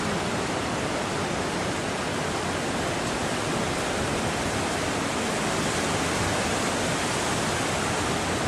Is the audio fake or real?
real